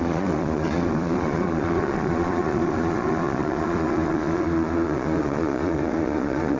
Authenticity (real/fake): fake